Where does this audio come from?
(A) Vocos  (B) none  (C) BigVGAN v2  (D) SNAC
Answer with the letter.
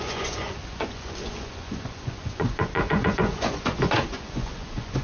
A